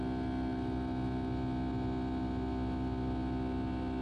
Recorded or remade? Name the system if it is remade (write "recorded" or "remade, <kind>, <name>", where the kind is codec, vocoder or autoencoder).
recorded